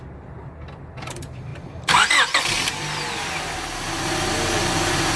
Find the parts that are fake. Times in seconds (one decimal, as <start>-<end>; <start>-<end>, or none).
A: none